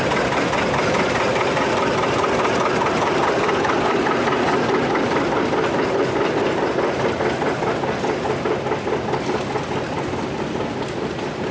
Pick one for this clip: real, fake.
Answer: real